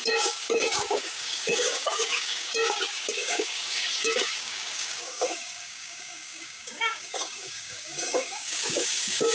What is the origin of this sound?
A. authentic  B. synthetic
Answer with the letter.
B